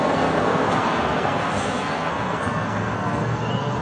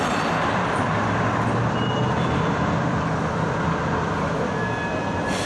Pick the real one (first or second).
second